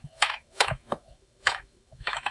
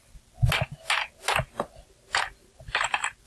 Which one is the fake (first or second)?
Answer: first